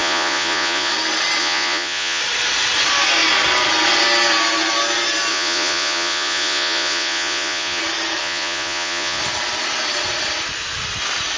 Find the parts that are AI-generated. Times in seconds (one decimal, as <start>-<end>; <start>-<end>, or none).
0.0-0.9; 1.4-2.2; 5.3-7.8; 8.2-9.2